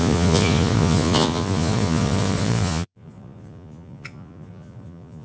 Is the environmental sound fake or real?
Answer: fake